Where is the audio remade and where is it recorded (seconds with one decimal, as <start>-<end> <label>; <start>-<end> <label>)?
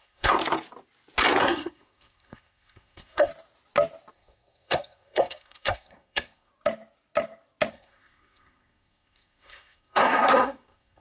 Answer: 0.0-0.4 remade; 0.4-1.4 recorded; 1.4-3.3 remade; 3.3-4.1 recorded; 4.1-6.5 remade; 6.5-7.7 recorded; 7.7-11.0 remade